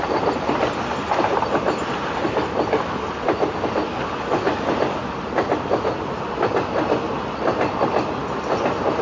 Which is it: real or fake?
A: real